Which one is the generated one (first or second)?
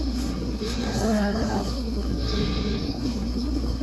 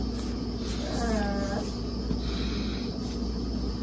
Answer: first